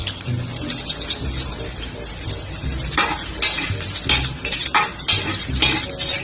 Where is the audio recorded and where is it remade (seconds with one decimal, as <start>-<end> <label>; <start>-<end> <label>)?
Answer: 0.0-6.2 recorded